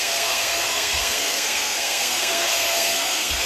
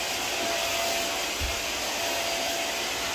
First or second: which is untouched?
second